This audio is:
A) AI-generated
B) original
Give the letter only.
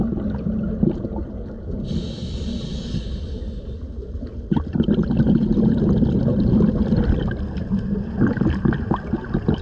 B